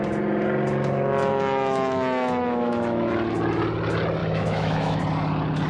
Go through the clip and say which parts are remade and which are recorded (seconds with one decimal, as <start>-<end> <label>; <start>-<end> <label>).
0.0-1.3 recorded; 1.3-3.1 remade; 3.1-4.2 recorded; 4.2-5.0 remade; 5.0-5.7 recorded